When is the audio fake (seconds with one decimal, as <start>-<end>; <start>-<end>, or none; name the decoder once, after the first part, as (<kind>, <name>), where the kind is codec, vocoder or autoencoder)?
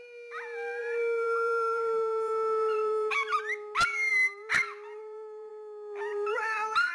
0.8-3.4 (vocoder, BigVGAN v2); 4.1-5.5; 6.1-6.9